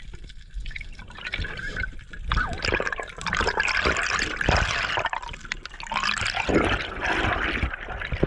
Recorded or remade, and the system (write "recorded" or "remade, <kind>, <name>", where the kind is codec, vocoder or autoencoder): recorded